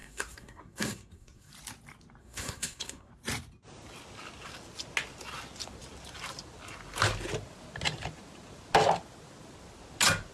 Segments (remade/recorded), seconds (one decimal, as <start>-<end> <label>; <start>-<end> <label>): 0.0-1.5 remade; 1.5-2.2 recorded; 2.2-3.1 remade; 3.1-10.3 recorded

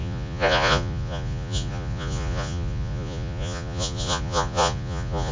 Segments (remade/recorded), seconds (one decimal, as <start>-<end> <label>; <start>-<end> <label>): 0.0-5.3 remade

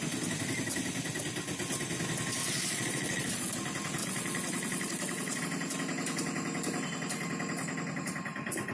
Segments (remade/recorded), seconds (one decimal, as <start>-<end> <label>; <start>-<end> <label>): 0.0-2.4 recorded; 2.4-3.5 remade; 3.5-4.0 recorded; 4.0-5.4 remade; 5.4-8.7 recorded

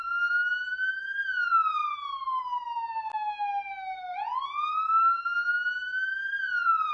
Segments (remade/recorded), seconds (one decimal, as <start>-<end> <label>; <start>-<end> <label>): 0.0-6.9 recorded

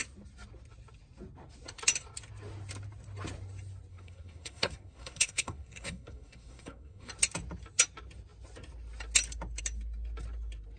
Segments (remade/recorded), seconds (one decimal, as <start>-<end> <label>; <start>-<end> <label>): 0.0-3.9 recorded; 3.9-7.1 remade; 7.1-10.8 recorded